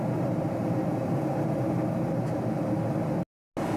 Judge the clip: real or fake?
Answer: real